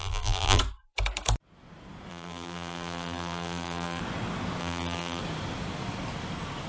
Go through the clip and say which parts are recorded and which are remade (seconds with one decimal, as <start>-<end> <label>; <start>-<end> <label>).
0.0-0.6 remade; 0.6-2.1 recorded; 2.1-4.0 remade; 4.0-4.6 recorded; 4.6-5.2 remade; 5.2-6.7 recorded